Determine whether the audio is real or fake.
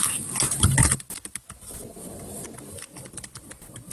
real